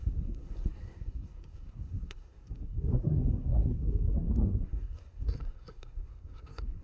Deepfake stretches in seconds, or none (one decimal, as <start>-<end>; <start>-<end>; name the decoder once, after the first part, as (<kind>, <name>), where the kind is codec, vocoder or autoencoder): 0.0-6.8 (codec, SNAC)